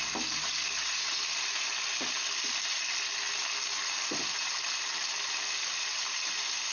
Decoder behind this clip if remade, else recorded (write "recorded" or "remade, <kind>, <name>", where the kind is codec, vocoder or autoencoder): recorded